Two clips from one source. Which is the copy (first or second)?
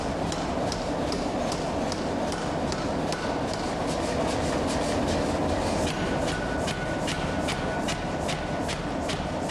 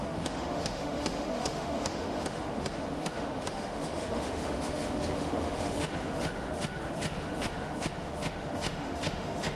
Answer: second